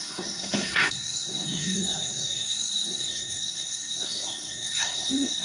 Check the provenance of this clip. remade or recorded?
remade